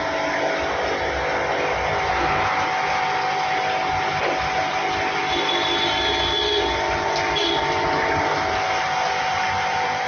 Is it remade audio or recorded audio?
recorded